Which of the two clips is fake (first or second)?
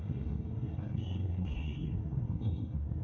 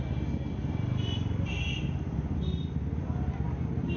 first